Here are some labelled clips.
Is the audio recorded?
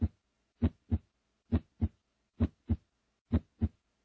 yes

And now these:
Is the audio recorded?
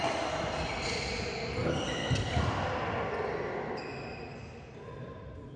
yes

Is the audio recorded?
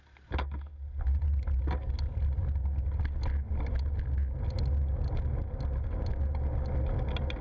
yes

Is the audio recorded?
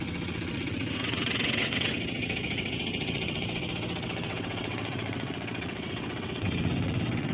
no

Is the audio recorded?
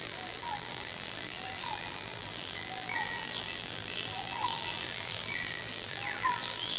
no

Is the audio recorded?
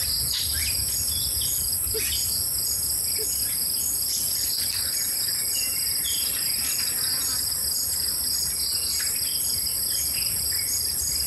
yes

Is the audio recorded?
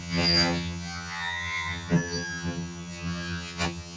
no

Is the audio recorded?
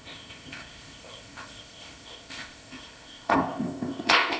no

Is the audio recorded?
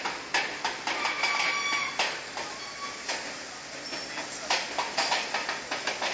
yes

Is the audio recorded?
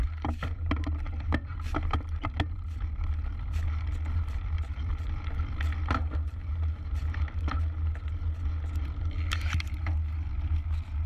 yes